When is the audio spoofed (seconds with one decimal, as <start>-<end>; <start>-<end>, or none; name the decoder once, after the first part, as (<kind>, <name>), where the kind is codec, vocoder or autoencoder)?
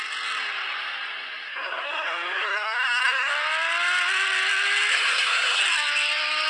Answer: 1.5-3.3 (codec, SNAC); 4.9-5.6